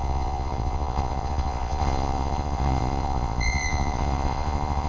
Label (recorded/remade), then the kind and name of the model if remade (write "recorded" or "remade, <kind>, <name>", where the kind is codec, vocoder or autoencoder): remade, vocoder, Vocos